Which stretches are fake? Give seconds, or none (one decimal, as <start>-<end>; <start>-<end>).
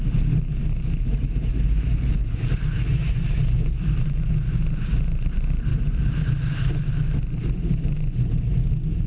0.6-4.2; 5.7-6.7